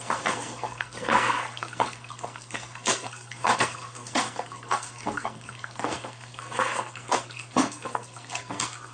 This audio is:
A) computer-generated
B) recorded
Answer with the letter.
A